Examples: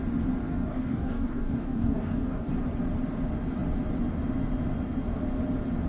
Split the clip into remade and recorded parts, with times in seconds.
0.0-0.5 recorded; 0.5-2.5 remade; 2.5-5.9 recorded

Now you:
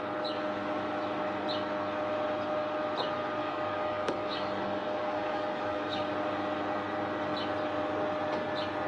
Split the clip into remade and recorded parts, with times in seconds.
0.0-3.4 recorded; 3.4-6.1 remade; 6.1-8.9 recorded

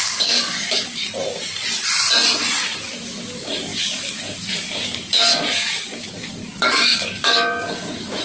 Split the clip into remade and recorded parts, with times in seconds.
0.0-1.0 remade; 1.0-2.6 recorded; 2.6-8.2 remade

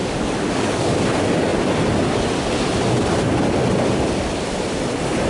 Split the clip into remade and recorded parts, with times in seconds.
0.0-1.0 remade; 1.0-5.3 recorded

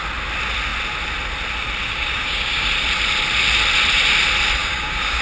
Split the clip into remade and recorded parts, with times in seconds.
0.0-1.8 recorded; 1.8-2.7 remade; 2.7-4.6 recorded; 4.6-5.2 remade

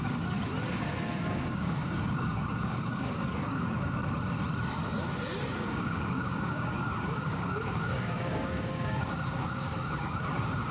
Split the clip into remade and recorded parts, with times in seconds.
0.0-0.5 remade; 0.5-1.3 recorded; 1.3-4.0 remade; 4.0-5.7 recorded; 5.7-10.7 remade

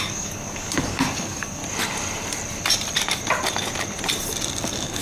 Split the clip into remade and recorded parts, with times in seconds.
0.0-1.6 remade; 1.6-4.6 recorded; 4.6-5.0 remade